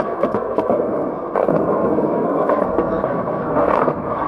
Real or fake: fake